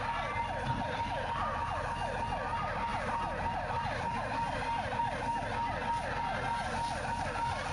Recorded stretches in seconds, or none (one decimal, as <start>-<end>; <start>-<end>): 0.0-0.7; 1.7-2.9; 5.0-7.7